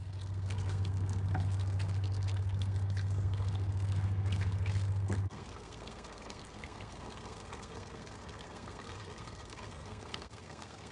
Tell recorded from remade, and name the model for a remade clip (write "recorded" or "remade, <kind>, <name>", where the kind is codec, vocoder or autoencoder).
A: remade, codec, SNAC